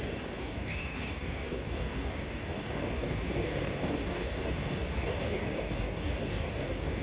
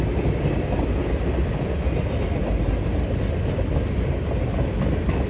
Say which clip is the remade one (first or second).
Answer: first